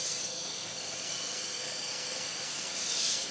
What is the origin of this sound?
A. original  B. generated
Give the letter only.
B